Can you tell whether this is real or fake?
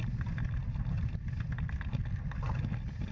real